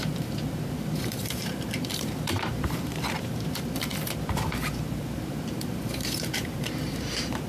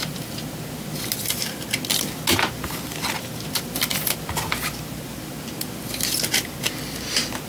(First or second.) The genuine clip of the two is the second